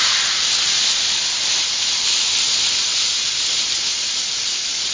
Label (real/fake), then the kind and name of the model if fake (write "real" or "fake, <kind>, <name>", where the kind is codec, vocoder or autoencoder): real